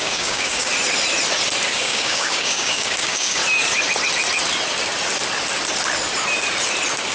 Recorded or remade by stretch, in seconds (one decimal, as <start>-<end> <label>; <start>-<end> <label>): 0.0-0.7 remade; 0.7-1.7 recorded; 1.7-3.4 remade; 3.4-7.1 recorded